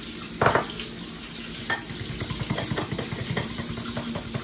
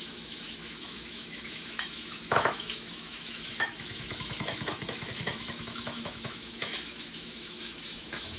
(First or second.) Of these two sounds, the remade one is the second